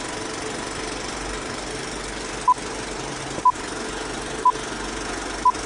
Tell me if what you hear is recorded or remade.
recorded